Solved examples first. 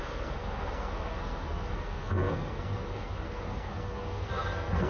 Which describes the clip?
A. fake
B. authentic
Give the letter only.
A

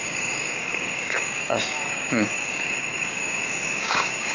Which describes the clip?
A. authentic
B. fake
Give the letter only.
B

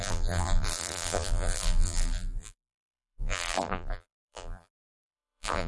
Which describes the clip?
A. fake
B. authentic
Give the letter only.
A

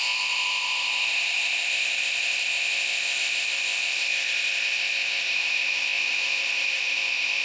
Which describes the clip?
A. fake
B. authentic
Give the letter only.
A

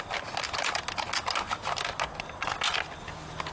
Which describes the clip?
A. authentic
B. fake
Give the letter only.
A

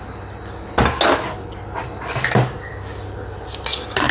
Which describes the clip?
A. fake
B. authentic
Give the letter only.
B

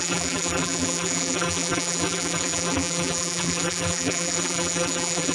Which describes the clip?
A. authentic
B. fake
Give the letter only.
B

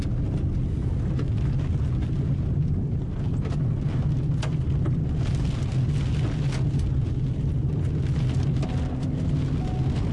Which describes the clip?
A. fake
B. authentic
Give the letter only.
B